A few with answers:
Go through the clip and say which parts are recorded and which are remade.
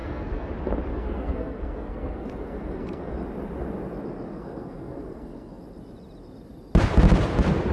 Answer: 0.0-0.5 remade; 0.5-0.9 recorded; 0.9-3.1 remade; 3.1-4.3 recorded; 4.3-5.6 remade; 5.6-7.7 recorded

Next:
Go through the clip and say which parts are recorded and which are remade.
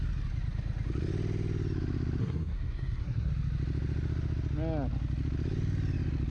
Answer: 0.0-2.2 recorded; 2.2-3.3 remade; 3.3-6.3 recorded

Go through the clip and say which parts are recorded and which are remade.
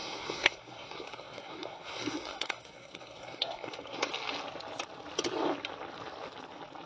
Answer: 0.0-4.1 remade; 4.1-6.9 recorded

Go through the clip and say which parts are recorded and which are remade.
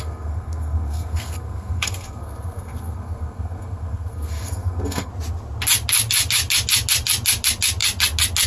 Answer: 0.0-5.1 remade; 5.1-8.5 recorded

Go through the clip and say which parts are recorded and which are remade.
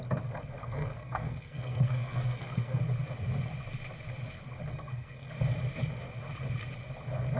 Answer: 0.0-0.6 recorded; 0.6-2.8 remade; 2.8-4.7 recorded; 4.7-5.3 remade; 5.3-7.4 recorded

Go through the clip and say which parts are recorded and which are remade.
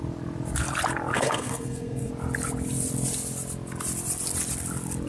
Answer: 0.0-1.1 recorded; 1.1-2.1 remade; 2.1-5.1 recorded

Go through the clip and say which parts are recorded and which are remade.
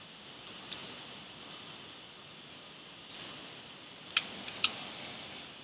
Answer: 0.0-5.6 recorded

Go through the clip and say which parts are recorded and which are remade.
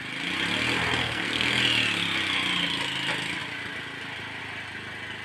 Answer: 0.0-1.0 recorded; 1.0-1.6 remade; 1.6-5.2 recorded